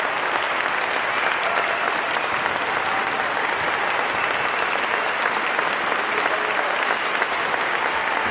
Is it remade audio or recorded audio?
recorded